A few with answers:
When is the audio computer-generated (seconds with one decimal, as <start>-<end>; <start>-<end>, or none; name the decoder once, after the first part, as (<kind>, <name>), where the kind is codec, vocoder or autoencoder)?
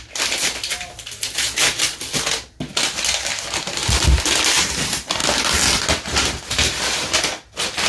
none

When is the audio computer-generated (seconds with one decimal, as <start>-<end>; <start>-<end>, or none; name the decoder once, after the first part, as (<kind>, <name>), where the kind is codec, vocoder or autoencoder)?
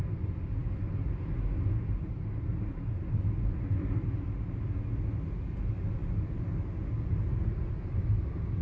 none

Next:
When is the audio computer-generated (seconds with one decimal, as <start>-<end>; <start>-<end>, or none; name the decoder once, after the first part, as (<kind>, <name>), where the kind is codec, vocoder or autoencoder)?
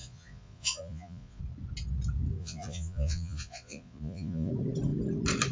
0.0-1.4 (vocoder, Vocos); 2.4-4.5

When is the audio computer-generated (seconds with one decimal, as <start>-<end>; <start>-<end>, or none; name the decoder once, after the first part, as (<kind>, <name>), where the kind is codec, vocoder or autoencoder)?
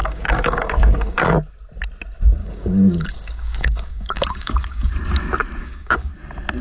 0.0-1.3 (codec, DAC); 2.4-4.9; 5.6-6.1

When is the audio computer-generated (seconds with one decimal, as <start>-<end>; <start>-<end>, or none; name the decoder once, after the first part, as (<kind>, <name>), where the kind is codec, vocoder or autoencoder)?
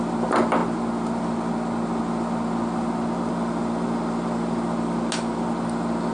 none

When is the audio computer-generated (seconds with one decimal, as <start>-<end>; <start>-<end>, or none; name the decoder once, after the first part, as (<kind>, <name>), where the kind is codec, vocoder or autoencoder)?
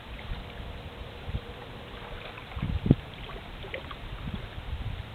none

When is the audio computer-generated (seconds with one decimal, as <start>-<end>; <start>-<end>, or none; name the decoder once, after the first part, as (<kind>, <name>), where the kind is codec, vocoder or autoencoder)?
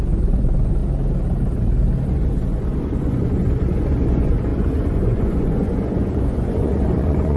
0.0-0.8 (vocoder, Vocos); 2.1-7.4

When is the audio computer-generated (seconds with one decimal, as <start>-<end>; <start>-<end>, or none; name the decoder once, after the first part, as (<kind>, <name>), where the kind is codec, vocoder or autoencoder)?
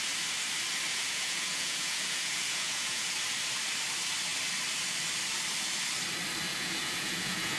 0.9-3.1 (vocoder, Vocos); 6.5-7.6